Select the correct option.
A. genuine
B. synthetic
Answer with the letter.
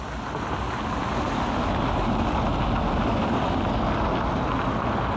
A